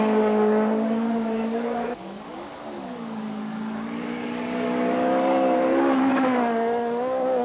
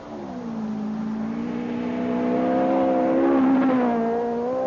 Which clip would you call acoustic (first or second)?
second